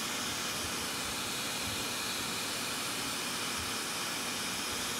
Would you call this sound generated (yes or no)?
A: no